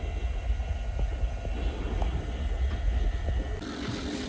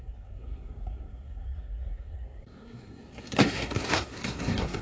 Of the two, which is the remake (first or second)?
second